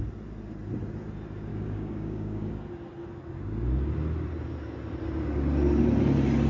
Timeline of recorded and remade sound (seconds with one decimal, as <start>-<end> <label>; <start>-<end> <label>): 0.0-1.5 recorded; 1.5-2.5 remade; 2.5-6.5 recorded

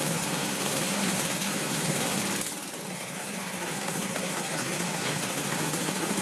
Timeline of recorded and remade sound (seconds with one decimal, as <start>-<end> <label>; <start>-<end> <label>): 0.0-2.2 remade; 2.2-2.9 recorded; 2.9-6.2 remade

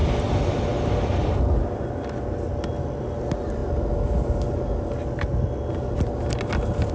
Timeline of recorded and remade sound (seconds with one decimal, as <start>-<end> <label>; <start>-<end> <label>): 0.0-6.9 recorded

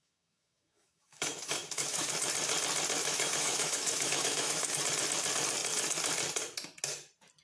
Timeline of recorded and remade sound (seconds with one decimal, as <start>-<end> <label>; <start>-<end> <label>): 0.0-2.1 remade; 2.1-3.0 recorded; 3.0-4.7 remade; 4.7-7.4 recorded